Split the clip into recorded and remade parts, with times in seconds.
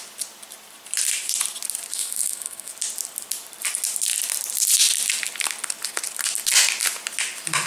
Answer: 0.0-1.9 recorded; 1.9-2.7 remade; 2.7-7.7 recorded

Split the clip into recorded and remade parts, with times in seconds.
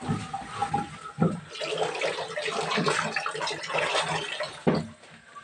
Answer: 0.0-5.4 recorded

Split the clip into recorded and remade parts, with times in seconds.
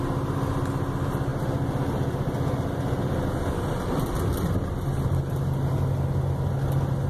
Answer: 0.0-7.1 recorded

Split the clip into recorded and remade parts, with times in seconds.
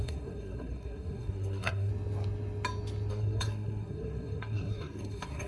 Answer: 0.0-1.9 remade; 1.9-3.1 recorded; 3.1-5.5 remade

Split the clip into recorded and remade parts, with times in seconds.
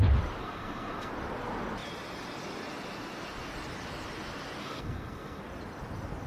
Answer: 0.0-0.4 recorded; 0.4-1.1 remade; 1.1-4.6 recorded; 4.6-5.4 remade; 5.4-6.3 recorded